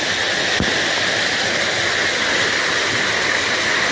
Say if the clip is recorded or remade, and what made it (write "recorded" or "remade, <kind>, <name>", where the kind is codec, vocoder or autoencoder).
recorded